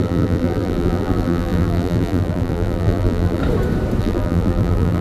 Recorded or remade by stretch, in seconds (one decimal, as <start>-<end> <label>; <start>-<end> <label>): 0.0-3.4 remade; 3.4-4.0 recorded; 4.0-5.0 remade